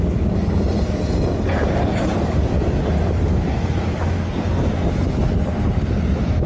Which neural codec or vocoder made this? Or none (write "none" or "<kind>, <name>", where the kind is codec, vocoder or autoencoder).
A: none